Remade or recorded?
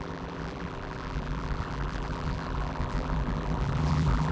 remade